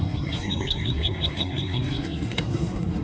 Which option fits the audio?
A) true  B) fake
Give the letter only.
B